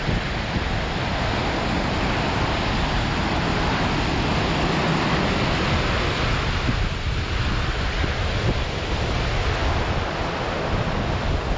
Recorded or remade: recorded